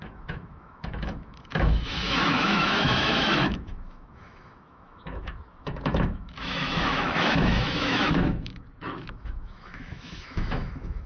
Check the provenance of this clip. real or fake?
fake